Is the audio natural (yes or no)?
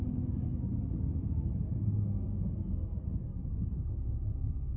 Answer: yes